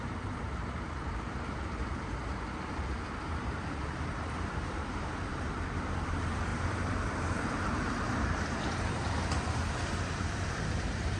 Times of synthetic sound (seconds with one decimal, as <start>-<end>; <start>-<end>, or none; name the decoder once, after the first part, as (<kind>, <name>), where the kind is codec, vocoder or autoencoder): 0.0-5.3 (vocoder, BigVGAN v2); 6.1-11.2